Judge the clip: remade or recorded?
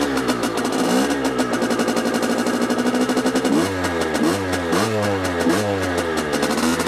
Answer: recorded